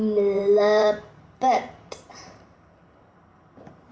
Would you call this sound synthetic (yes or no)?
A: yes